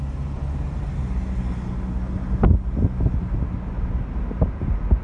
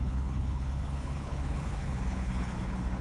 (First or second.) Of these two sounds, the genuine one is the first